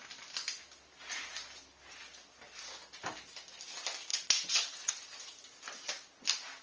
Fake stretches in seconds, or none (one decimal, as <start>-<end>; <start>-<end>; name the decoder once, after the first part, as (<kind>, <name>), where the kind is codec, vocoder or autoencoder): 4.1-4.9 (vocoder, WaveNeXt)